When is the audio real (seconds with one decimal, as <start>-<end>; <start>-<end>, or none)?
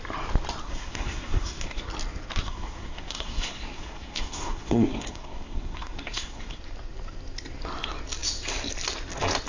0.0-0.6; 1.9-2.3; 6.6-9.5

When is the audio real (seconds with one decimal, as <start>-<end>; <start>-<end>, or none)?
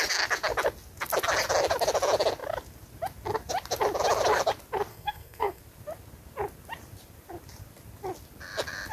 0.0-4.9; 5.6-8.9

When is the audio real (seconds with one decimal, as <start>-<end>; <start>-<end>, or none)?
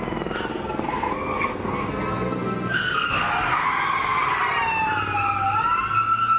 0.0-0.5; 3.3-6.4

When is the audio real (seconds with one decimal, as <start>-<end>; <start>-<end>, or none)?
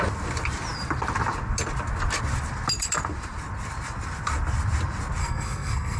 0.0-5.2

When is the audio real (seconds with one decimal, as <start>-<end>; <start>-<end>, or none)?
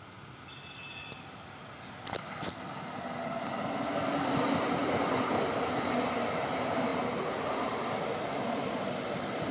0.0-9.5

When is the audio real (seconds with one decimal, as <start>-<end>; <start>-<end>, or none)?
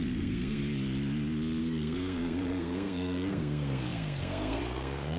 0.6-1.6